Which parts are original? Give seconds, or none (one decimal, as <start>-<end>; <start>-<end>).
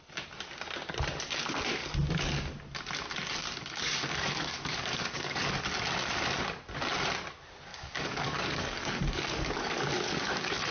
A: 0.0-1.8; 2.5-3.4; 5.6-7.7